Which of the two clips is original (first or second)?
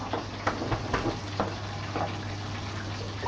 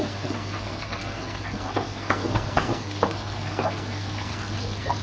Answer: first